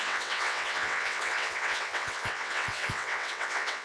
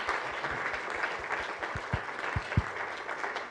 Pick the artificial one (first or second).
first